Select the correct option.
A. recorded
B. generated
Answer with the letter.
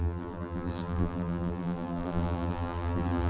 B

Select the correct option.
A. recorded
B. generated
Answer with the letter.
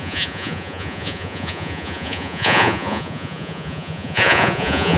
B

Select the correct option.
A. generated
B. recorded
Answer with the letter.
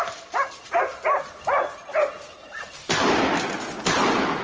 B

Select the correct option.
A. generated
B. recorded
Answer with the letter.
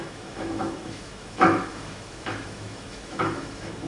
A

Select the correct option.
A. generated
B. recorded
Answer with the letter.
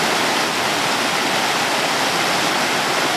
B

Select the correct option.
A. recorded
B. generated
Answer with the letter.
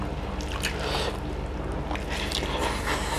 A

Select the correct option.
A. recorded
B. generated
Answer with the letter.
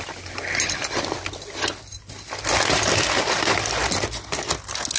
A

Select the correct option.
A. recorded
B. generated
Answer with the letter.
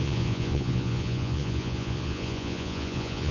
B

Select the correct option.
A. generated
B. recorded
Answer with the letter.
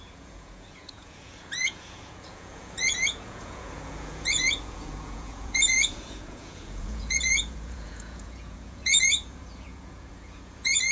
A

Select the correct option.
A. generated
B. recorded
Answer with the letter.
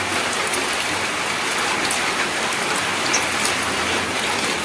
B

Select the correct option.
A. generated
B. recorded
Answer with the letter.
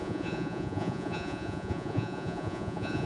A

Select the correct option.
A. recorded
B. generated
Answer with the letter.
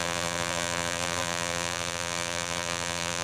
B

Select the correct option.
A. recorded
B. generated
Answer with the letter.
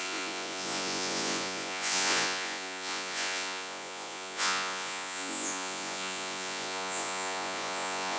B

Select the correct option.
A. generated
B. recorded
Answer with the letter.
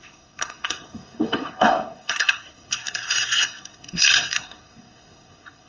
A